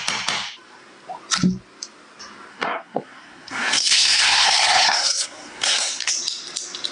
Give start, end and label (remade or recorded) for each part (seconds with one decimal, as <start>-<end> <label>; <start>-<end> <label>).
0.0-2.5 recorded; 2.5-6.1 remade; 6.1-6.9 recorded